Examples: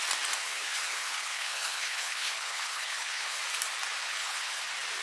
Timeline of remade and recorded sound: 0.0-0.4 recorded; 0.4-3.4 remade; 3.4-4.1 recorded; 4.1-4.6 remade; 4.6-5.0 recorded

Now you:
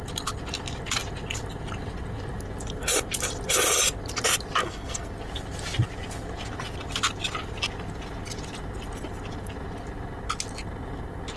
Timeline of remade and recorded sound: 0.0-4.6 recorded; 4.6-5.1 remade; 5.1-11.4 recorded

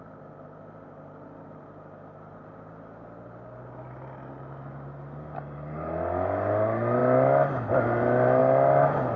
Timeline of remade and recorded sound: 0.0-9.2 recorded

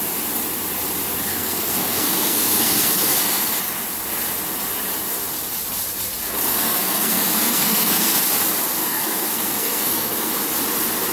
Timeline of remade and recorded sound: 0.0-1.3 recorded; 1.3-3.6 remade; 3.6-6.5 recorded; 6.5-8.2 remade; 8.2-8.8 recorded; 8.8-10.3 remade; 10.3-11.1 recorded

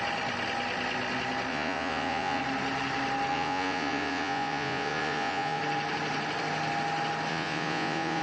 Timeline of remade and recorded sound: 0.0-1.5 recorded; 1.5-2.4 remade; 2.4-3.3 recorded; 3.3-5.6 remade; 5.6-7.3 recorded; 7.3-8.2 remade